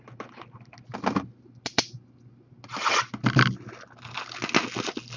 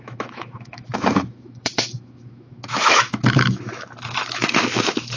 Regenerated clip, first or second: second